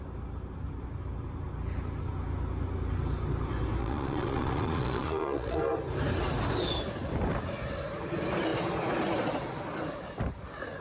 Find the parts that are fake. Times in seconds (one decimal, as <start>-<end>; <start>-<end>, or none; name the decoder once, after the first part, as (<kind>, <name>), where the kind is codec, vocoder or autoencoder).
3.8-5.6 (vocoder, Vocos)